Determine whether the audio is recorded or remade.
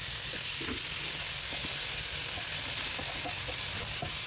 recorded